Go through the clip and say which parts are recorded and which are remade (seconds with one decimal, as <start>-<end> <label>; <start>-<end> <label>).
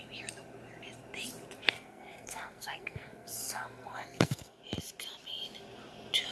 0.0-1.6 recorded; 1.6-4.6 remade; 4.6-6.3 recorded